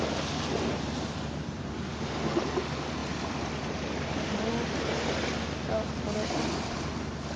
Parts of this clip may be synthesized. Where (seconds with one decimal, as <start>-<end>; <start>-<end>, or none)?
1.9-2.5; 3.0-4.5